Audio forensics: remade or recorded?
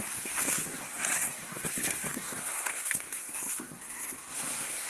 remade